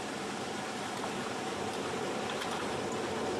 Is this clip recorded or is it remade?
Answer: remade